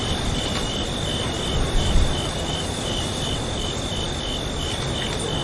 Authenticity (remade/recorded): recorded